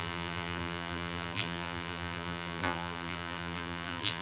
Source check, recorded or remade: remade